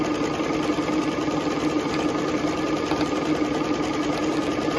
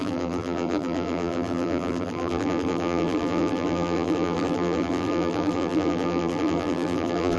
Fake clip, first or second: second